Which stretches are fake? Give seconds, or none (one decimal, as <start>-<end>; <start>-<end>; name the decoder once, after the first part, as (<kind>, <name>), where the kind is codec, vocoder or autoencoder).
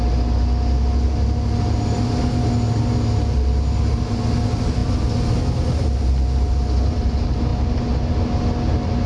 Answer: none